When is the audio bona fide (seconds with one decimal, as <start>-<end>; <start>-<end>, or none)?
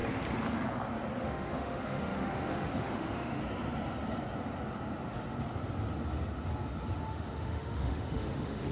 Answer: 0.0-1.2; 3.4-7.1